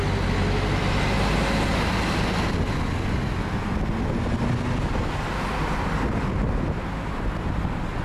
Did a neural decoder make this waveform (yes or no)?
no